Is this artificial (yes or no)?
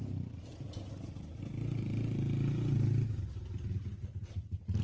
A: no